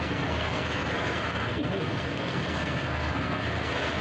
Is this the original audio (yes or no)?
no